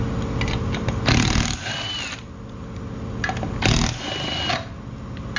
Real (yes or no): yes